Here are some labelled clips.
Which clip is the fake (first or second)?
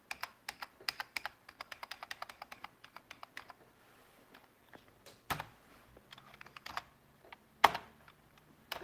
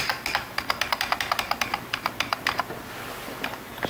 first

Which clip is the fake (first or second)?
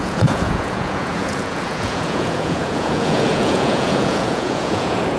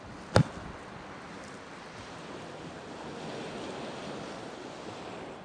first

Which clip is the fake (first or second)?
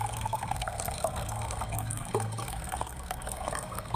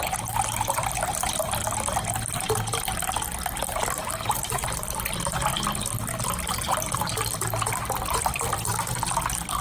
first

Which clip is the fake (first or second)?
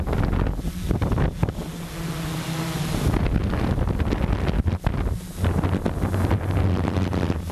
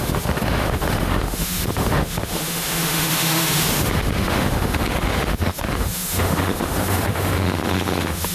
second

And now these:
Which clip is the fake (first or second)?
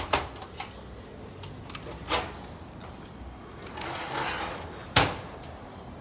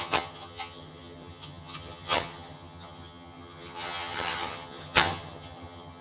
second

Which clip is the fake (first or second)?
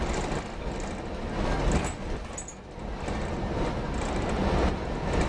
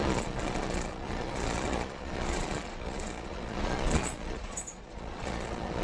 second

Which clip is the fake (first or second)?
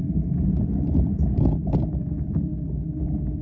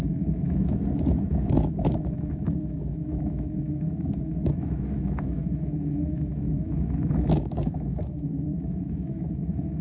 second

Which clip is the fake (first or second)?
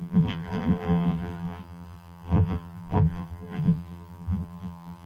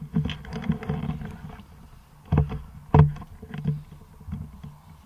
first